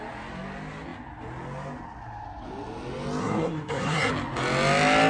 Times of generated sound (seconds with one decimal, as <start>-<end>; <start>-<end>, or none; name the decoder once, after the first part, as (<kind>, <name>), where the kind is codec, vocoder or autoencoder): 3.2-4.1 (codec, SNAC)